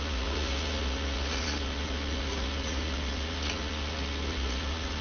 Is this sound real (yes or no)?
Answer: no